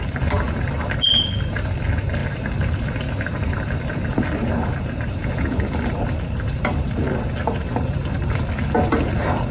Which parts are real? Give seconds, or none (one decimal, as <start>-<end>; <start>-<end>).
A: 0.0-7.4; 8.3-9.5